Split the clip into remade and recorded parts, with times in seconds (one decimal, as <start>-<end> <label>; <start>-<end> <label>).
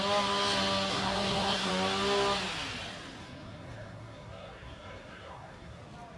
0.0-0.9 recorded; 0.9-1.7 remade; 1.7-3.2 recorded; 3.2-5.8 remade; 5.8-6.2 recorded